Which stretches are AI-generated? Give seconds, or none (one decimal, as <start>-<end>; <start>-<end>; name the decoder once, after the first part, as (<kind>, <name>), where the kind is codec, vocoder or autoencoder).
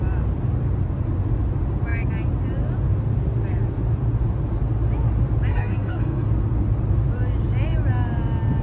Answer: 5.5-6.3 (codec, SNAC)